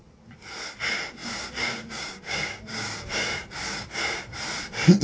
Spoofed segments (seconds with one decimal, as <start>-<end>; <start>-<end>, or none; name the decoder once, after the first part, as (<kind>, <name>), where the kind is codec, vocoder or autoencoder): 1.2-4.2 (codec, DAC)